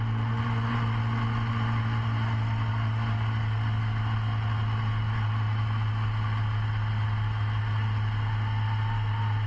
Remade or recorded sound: recorded